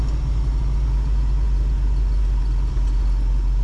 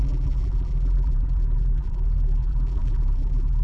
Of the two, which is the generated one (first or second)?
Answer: second